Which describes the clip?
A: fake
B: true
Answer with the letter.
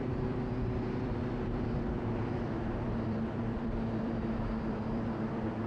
A